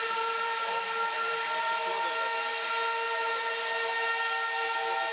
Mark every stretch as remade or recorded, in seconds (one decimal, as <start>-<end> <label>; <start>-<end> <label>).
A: 0.0-1.9 remade; 1.9-5.1 recorded